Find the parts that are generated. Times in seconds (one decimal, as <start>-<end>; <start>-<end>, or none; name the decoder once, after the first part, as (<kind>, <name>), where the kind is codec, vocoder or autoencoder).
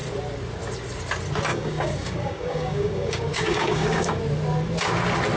1.5-4.2 (codec, DAC)